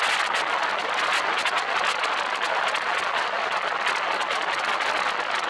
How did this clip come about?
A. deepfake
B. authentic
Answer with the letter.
B